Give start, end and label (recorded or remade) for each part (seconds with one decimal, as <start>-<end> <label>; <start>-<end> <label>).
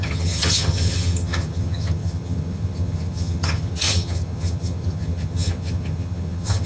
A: 0.0-6.7 remade